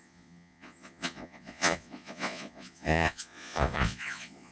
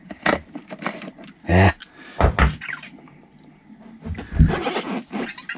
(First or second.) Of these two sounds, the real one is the second